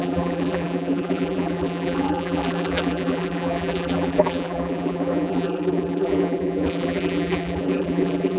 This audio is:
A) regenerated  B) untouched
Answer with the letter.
A